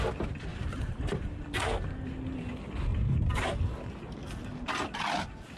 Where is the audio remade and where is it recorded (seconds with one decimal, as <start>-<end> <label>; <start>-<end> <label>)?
0.0-0.5 recorded; 0.5-1.4 remade; 1.4-5.6 recorded